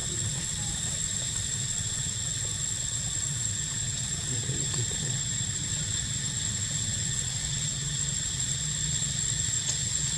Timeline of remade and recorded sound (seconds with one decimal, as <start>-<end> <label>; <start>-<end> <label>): 0.0-5.2 remade; 5.2-5.7 recorded; 5.7-10.2 remade